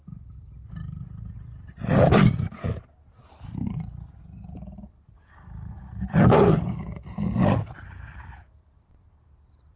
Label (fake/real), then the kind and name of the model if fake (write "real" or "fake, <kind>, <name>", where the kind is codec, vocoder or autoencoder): real